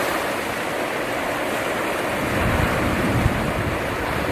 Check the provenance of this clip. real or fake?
real